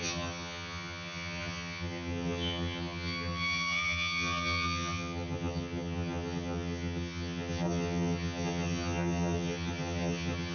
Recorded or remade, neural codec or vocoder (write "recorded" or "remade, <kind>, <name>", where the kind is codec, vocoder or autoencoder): remade, vocoder, HiFi-GAN